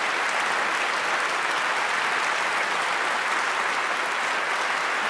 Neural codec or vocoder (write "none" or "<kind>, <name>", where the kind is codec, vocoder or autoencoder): none